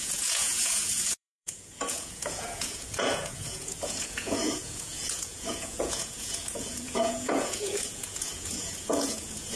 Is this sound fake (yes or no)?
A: yes